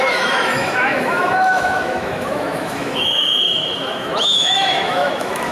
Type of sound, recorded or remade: remade